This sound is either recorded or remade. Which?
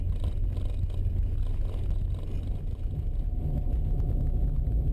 recorded